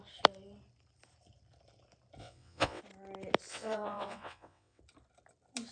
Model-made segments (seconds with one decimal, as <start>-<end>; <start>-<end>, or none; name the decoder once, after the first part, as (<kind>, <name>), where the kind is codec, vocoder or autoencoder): 2.2-2.8 (vocoder, WaveNeXt); 3.5-4.8